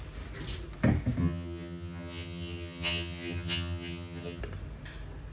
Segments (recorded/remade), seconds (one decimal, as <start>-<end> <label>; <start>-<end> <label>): 0.0-1.2 recorded; 1.2-4.4 remade; 4.4-5.3 recorded